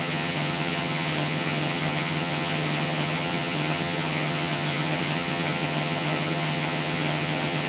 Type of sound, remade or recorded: remade